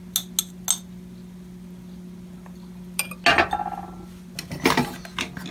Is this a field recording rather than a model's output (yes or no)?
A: yes